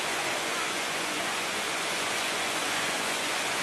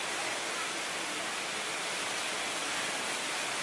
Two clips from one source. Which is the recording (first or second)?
second